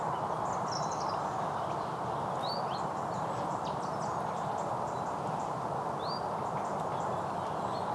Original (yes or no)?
yes